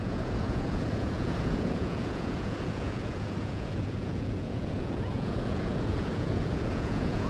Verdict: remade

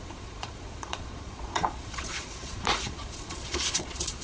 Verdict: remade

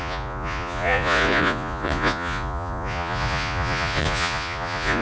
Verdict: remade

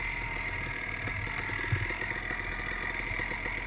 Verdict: recorded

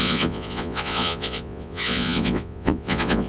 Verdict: remade